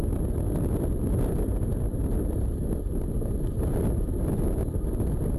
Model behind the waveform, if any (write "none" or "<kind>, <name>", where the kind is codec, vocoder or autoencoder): none